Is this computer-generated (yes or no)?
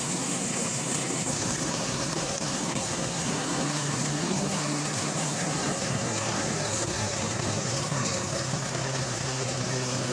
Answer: yes